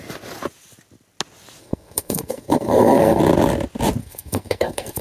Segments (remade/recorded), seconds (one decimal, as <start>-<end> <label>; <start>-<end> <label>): 0.0-1.6 recorded; 1.6-3.2 remade; 3.2-4.0 recorded; 4.0-5.0 remade